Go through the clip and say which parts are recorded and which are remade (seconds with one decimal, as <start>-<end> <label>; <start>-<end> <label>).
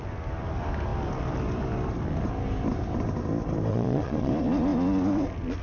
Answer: 0.0-3.7 recorded; 3.7-4.3 remade; 4.3-5.6 recorded